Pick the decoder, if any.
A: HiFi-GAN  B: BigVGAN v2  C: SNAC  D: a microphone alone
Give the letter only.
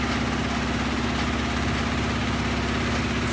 D